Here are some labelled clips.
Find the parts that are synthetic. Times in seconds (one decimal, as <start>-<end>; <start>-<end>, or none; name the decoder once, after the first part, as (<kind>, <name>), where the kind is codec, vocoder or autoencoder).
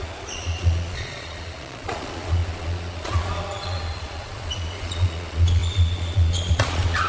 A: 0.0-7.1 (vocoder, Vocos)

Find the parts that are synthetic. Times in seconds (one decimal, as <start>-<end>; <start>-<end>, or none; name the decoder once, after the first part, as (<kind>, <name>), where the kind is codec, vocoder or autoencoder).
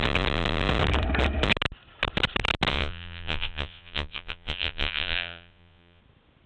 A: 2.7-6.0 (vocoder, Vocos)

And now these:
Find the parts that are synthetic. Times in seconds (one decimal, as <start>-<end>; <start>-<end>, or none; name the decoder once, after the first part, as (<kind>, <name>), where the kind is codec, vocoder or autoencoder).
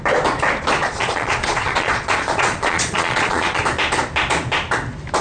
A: 0.8-3.6 (vocoder, Vocos)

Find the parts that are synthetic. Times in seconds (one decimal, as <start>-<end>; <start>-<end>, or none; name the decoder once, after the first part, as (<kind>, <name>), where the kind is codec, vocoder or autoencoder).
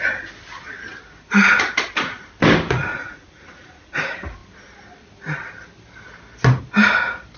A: 2.9-4.0 (vocoder, Vocos)